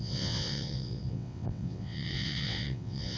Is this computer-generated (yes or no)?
yes